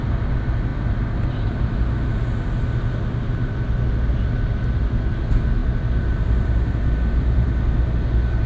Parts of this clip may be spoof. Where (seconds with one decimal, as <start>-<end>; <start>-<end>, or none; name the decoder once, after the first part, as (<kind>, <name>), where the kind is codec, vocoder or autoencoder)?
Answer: 5.6-8.5 (vocoder, BigVGAN v2)